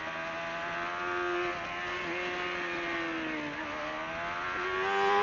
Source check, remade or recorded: recorded